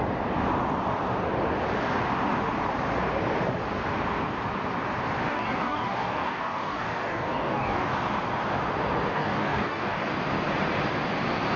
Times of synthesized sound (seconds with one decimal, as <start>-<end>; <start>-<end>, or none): 5.3-7.9; 9.1-10.1